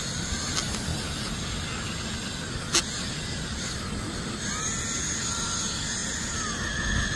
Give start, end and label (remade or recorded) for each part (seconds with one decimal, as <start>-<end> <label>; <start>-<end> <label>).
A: 0.0-7.2 recorded